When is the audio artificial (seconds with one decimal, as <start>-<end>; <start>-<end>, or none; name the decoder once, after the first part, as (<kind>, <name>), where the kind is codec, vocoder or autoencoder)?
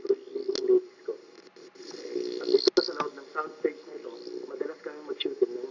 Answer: none